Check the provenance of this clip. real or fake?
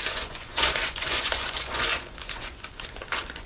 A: fake